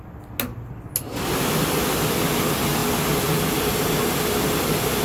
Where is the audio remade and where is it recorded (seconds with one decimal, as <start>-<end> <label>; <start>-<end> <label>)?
0.0-2.8 recorded; 2.8-3.5 remade; 3.5-5.0 recorded